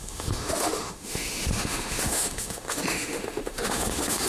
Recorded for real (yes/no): no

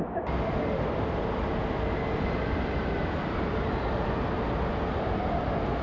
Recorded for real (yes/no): yes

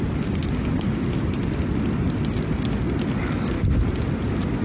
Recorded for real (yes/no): yes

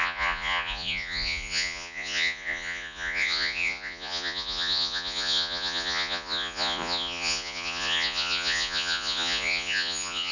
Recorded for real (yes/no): no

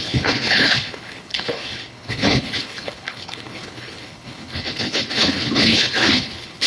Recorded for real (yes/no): no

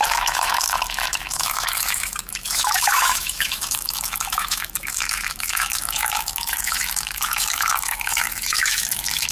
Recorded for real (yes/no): no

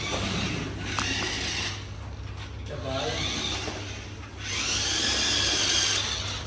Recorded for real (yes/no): yes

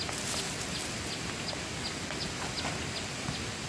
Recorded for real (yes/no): yes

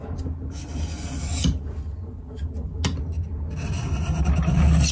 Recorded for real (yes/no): yes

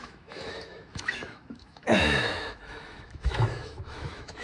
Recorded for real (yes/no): no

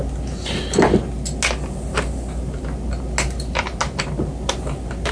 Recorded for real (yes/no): yes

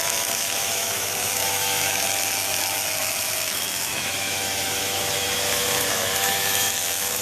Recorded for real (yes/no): no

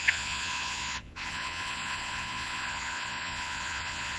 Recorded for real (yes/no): no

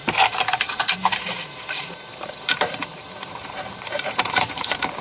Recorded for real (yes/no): no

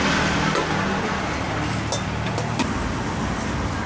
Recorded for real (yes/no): yes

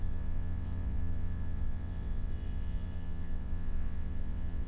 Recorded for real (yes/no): no